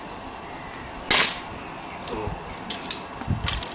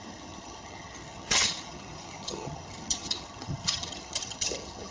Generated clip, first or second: second